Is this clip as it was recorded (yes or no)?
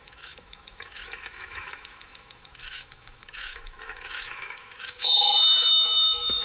no